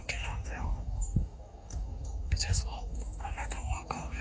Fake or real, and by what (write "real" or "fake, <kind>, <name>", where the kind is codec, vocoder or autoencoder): fake, codec, DAC